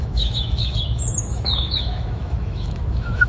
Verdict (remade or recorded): remade